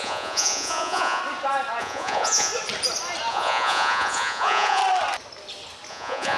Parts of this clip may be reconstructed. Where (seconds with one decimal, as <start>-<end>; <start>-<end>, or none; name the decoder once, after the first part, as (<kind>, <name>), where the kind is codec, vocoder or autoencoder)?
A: 0.0-1.2 (vocoder, Vocos); 1.8-2.5; 3.3-4.8; 5.9-6.4